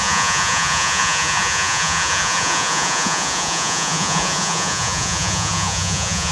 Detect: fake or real fake